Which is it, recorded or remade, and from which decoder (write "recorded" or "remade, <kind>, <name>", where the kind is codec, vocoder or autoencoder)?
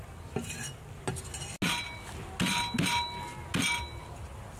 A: recorded